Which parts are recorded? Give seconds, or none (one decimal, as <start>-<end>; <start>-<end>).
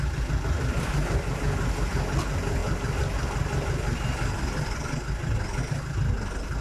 0.0-6.6